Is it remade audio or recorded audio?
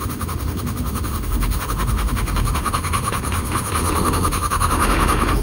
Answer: remade